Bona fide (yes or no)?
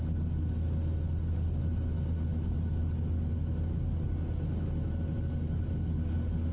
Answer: yes